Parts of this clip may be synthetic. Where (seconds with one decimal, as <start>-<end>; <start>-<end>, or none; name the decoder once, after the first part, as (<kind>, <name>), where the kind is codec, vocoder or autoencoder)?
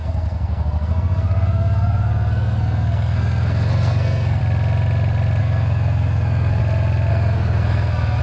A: 0.0-4.4 (codec, SNAC); 5.4-6.6; 7.1-8.2